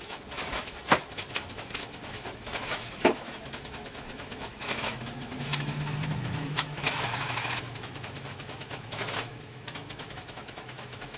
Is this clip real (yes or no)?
no